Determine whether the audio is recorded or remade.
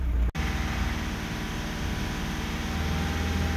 recorded